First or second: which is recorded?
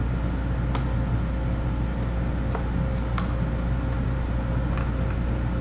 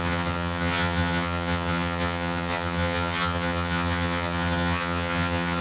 first